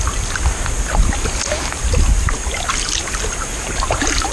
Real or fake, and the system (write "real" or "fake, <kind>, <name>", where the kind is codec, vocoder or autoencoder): real